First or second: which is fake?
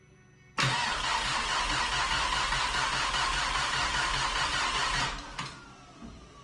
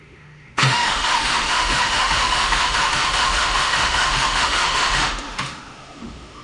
second